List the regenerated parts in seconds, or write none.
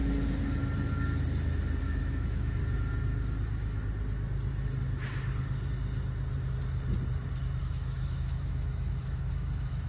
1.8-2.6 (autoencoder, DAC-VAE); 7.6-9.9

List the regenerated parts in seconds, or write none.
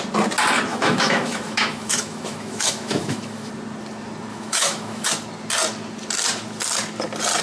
0.7-3.5 (autoencoder, DAC-VAE); 4.3-5.1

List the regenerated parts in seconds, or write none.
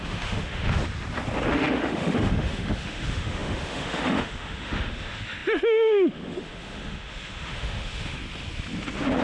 0.0-0.8 (autoencoder, DAC-VAE); 1.5-8.2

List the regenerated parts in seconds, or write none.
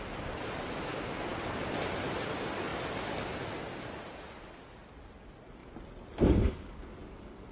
none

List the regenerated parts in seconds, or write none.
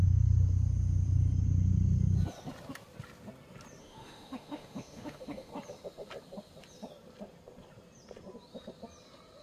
3.8-5.5 (autoencoder, DAC-VAE)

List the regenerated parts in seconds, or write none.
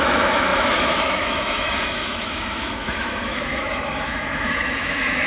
0.0-5.3 (autoencoder, DAC-VAE)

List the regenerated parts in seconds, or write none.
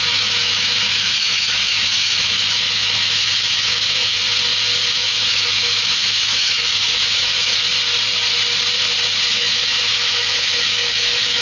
0.0-4.2 (autoencoder, DAC-VAE); 4.9-7.7; 9.3-11.4